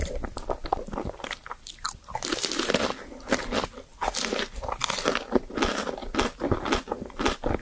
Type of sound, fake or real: real